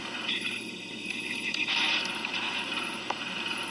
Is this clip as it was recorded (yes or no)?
no